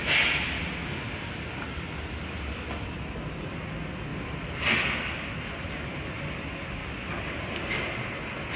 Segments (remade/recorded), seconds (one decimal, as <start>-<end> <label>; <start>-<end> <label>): 0.0-8.6 recorded